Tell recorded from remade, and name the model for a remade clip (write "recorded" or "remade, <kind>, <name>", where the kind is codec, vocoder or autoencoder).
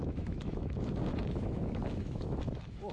remade, autoencoder, DAC-VAE